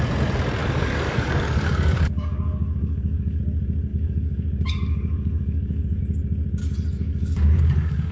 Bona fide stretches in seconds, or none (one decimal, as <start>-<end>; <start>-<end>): 0.0-0.6; 3.4-3.9; 6.0-6.6